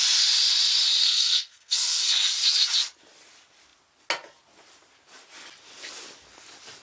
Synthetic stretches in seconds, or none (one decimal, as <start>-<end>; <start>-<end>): 1.0-2.0